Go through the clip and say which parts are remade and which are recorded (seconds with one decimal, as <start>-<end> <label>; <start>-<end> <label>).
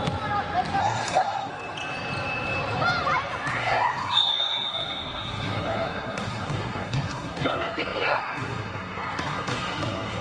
0.0-0.8 recorded; 0.8-1.5 remade; 1.5-3.5 recorded; 3.5-10.2 remade